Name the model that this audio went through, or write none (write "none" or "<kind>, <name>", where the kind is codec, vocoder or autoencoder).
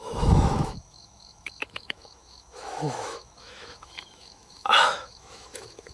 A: autoencoder, DAC-VAE